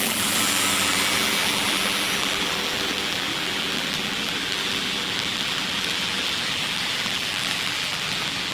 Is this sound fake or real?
fake